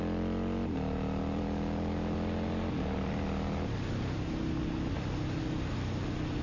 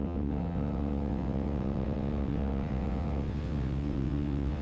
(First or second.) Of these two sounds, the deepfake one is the second